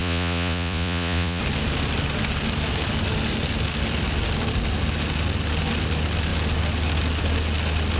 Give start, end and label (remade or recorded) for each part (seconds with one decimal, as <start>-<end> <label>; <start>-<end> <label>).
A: 0.0-1.4 remade; 1.4-8.0 recorded